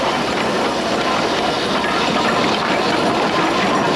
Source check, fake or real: real